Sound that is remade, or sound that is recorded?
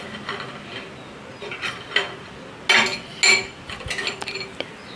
recorded